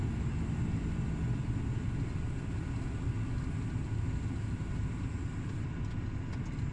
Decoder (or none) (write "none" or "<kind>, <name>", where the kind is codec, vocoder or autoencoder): none